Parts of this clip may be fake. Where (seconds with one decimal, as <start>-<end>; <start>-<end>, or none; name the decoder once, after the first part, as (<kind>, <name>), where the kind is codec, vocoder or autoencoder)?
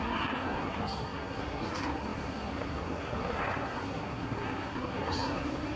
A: 0.0-5.8 (codec, SNAC)